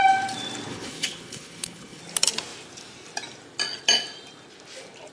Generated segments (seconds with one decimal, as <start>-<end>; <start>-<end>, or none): 0.7-2.0